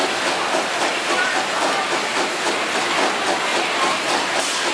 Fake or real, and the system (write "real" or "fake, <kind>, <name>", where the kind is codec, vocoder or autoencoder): real